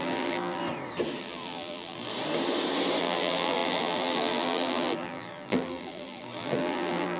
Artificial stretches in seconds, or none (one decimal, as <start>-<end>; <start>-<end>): 0.0-0.6; 1.2-2.1; 3.0-7.2

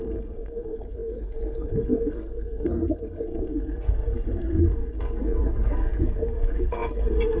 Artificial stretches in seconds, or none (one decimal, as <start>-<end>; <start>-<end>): 0.0-7.4

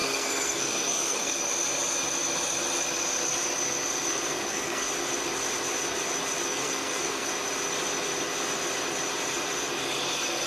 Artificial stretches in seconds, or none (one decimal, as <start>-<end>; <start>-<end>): 0.0-1.4; 4.1-4.9; 6.5-7.3

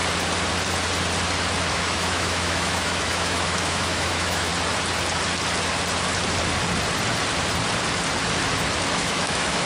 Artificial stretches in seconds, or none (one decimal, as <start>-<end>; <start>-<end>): 1.7-4.5; 8.9-9.7

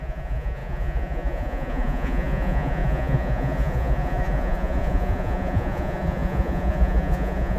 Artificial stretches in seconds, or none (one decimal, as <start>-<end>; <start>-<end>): 0.0-7.6

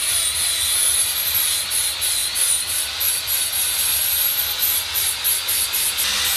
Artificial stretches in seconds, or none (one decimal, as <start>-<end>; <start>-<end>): none